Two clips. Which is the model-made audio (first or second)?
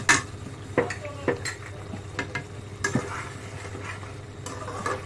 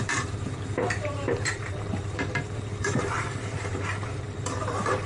second